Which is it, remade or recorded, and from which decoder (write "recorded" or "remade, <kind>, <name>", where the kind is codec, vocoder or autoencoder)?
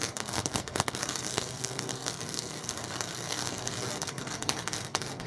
remade, codec, SNAC